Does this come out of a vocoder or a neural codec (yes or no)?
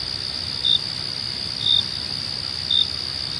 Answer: no